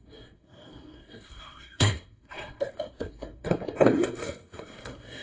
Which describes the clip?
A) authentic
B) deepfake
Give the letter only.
B